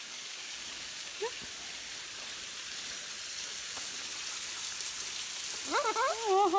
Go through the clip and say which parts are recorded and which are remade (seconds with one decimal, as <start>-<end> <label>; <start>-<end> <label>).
0.0-1.2 remade; 1.2-3.4 recorded; 3.4-4.1 remade; 4.1-6.6 recorded